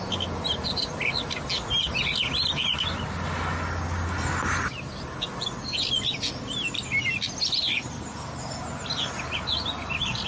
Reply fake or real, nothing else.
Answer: real